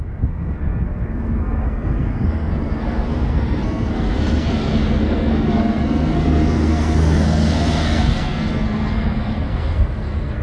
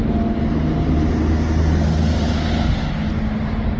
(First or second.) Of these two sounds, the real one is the second